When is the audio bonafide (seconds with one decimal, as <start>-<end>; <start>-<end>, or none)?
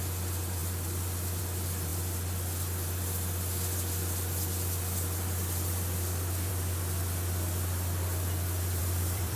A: 0.0-8.8